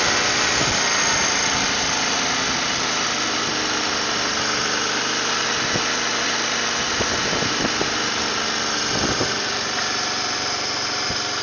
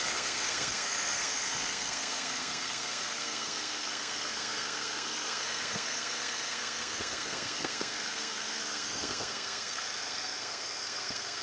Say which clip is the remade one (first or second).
second